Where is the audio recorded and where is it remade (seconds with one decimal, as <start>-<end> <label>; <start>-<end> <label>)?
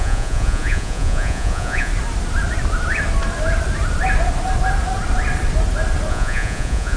0.0-1.9 remade; 1.9-6.1 recorded; 6.1-7.0 remade